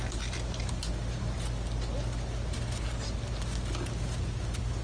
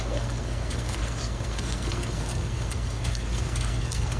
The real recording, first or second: first